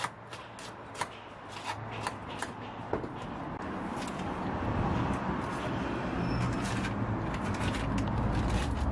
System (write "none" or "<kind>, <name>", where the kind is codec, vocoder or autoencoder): none